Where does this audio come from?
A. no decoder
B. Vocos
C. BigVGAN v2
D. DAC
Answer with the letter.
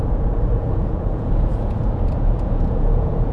B